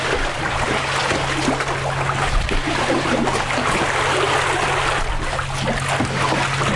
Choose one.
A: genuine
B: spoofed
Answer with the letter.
A